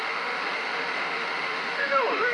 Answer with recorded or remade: remade